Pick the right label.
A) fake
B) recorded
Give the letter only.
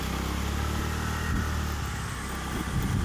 B